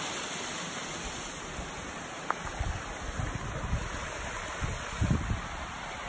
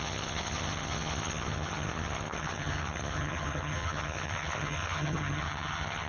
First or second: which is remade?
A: second